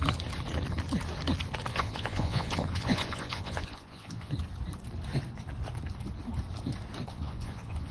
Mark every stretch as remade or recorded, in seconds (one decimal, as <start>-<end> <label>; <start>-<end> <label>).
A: 0.0-1.7 recorded; 1.7-4.3 remade; 4.3-7.1 recorded; 7.1-7.9 remade

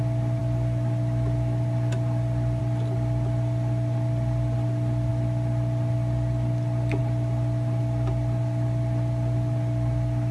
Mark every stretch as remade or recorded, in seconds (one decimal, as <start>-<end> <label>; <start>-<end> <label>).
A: 0.0-10.3 recorded

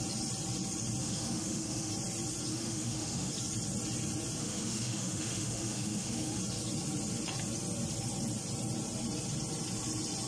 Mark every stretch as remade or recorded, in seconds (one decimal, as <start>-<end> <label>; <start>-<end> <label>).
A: 0.0-1.0 recorded; 1.0-1.9 remade; 1.9-2.5 recorded; 2.5-3.3 remade; 3.3-4.4 recorded; 4.4-6.4 remade; 6.4-10.3 recorded